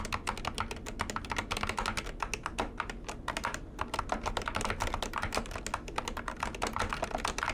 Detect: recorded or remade recorded